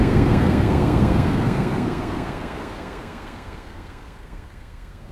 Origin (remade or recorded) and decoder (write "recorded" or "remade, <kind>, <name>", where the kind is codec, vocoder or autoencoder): remade, codec, SNAC